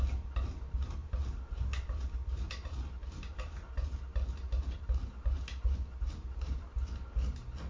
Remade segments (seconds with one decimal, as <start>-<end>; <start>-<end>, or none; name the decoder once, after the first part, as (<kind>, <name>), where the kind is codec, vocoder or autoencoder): none